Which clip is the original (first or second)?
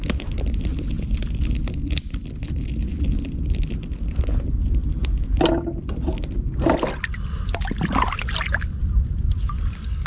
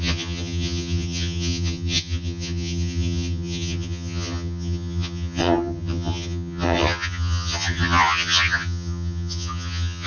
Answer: first